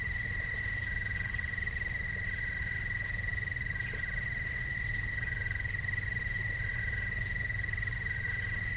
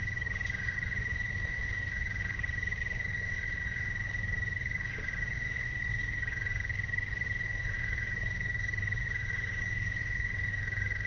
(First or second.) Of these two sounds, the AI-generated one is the second